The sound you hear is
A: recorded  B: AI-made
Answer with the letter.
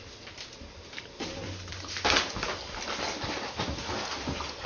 A